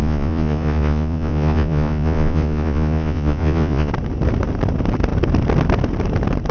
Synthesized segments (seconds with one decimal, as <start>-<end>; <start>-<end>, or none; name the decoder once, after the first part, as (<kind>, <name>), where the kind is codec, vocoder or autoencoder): 0.0-3.9 (vocoder, Vocos)